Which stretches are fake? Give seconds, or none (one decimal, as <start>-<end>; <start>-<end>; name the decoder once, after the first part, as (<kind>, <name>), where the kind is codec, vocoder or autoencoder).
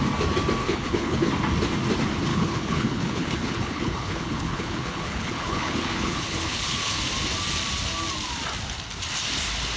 0.6-1.3 (codec, HILCodec); 2.3-7.0